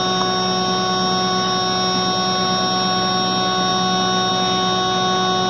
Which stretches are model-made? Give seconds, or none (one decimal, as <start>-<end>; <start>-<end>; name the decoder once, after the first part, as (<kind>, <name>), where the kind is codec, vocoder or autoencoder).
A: none